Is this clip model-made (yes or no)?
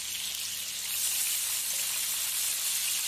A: no